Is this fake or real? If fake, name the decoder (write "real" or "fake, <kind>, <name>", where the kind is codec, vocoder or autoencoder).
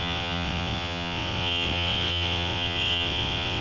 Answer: fake, vocoder, WaveNeXt